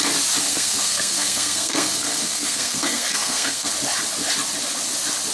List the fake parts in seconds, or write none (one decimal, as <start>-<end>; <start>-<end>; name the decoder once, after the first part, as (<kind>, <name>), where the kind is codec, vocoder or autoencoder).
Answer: 0.5-3.7 (codec, SNAC)